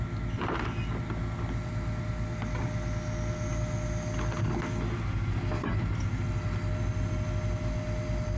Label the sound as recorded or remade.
recorded